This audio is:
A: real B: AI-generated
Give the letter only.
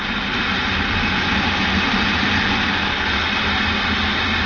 A